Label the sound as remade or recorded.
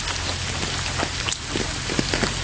recorded